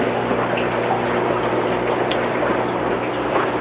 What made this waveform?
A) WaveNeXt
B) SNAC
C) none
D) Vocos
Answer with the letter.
C